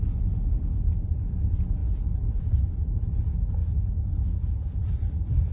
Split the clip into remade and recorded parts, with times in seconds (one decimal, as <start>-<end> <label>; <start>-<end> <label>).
0.0-1.8 recorded; 1.8-2.4 remade; 2.4-3.6 recorded; 3.6-5.1 remade; 5.1-5.5 recorded